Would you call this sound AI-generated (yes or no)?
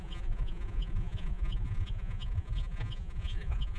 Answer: yes